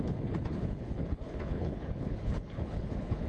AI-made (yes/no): yes